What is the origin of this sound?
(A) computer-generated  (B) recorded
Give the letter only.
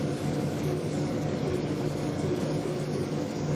A